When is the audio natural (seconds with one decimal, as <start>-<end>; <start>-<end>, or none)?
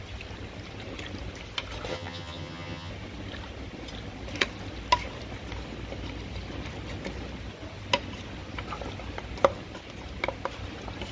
0.0-1.9; 2.9-11.1